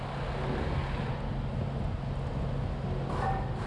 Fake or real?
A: real